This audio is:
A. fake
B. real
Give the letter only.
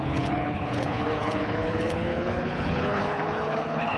A